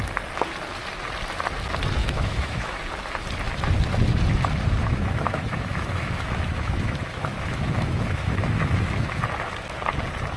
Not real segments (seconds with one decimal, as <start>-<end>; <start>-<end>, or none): 2.0-2.8; 4.8-9.2